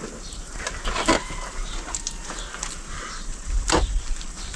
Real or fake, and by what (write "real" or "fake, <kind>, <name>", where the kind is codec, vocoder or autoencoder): real